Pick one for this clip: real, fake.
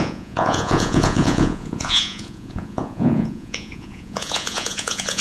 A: fake